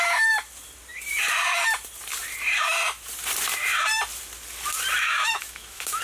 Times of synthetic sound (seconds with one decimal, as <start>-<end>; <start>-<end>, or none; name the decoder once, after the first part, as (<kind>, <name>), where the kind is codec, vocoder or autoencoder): 5.2-6.0 (autoencoder, DAC-VAE)